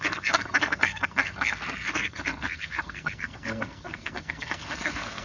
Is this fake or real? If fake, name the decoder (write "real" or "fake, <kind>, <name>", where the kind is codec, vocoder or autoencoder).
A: fake, codec, SNAC